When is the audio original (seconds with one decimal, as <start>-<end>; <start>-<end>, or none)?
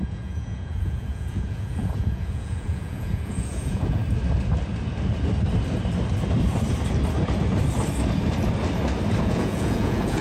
4.0-9.2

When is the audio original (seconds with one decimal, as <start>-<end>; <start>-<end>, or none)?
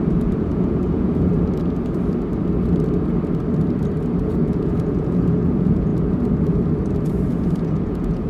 1.3-4.2; 5.9-7.0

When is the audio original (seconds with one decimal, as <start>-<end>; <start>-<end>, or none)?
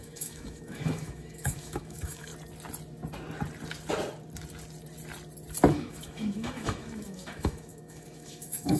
2.3-5.7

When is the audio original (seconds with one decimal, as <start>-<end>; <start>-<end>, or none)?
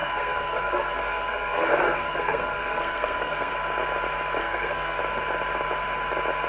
3.5-4.4; 5.0-6.5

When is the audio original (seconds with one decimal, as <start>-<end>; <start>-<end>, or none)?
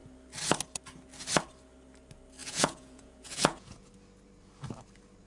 0.0-2.4; 3.9-5.3